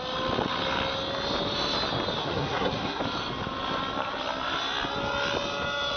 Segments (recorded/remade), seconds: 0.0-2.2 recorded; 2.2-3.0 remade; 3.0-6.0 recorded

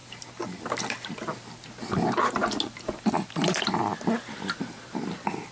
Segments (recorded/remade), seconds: 0.0-5.5 recorded

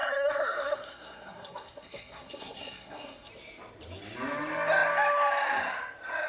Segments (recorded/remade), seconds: 0.0-3.3 remade; 3.3-6.3 recorded

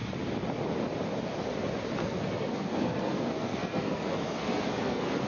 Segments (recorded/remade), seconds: 0.0-2.0 recorded; 2.0-5.3 remade

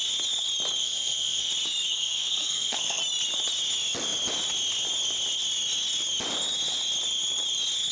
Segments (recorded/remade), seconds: 0.0-0.8 recorded; 0.8-1.5 remade; 1.5-1.9 recorded; 1.9-3.0 remade; 3.0-7.9 recorded

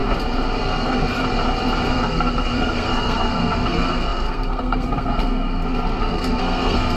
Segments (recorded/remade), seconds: 0.0-0.6 recorded; 0.6-1.2 remade; 1.2-1.9 recorded; 1.9-7.0 remade

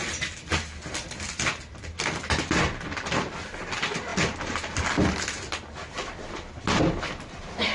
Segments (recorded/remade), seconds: 0.0-7.7 recorded